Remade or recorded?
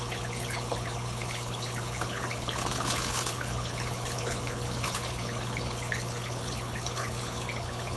remade